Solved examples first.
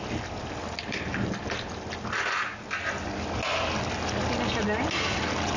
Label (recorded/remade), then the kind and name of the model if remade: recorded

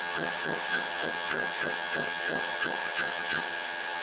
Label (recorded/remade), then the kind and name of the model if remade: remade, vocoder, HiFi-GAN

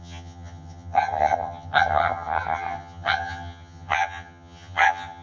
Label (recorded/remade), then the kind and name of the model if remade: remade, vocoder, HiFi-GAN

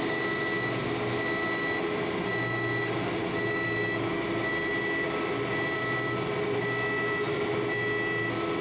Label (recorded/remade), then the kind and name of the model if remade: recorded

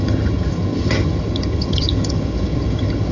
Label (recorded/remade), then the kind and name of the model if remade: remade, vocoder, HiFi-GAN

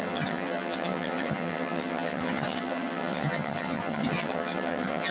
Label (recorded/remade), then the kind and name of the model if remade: remade, vocoder, HiFi-GAN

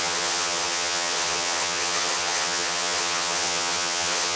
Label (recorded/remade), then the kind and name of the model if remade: remade, vocoder, HiFi-GAN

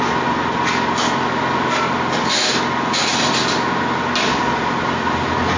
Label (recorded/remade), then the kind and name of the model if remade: recorded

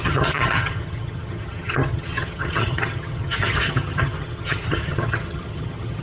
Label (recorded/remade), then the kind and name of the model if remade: remade, vocoder, HiFi-GAN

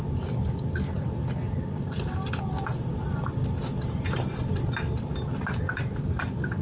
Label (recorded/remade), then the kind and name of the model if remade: recorded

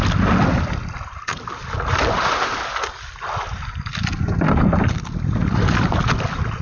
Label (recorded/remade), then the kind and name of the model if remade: recorded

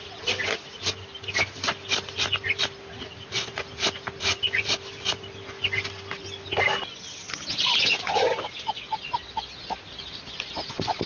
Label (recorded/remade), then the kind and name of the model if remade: recorded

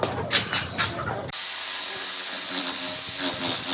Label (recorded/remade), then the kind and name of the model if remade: recorded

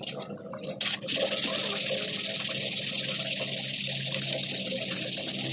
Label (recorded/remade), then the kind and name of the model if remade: recorded